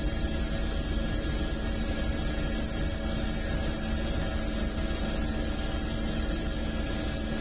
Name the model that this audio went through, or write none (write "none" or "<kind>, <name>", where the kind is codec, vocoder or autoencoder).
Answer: none